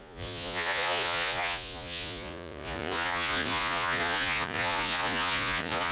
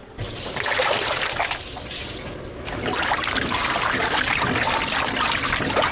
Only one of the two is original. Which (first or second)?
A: second